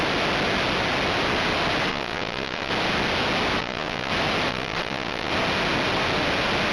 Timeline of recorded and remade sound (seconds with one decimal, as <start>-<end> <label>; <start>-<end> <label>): 0.0-1.9 recorded; 1.9-2.7 remade; 2.7-3.6 recorded; 3.6-4.1 remade; 4.1-4.5 recorded; 4.5-5.3 remade; 5.3-6.7 recorded